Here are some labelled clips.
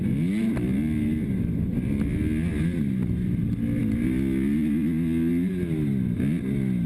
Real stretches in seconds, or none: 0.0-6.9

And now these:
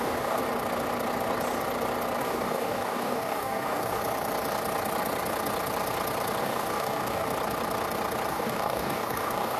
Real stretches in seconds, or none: 0.4-2.2; 4.0-6.4; 7.3-8.3

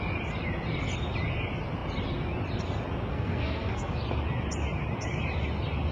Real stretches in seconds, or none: 0.0-3.1; 3.9-5.9

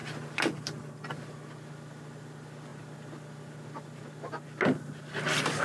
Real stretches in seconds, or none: 0.0-5.6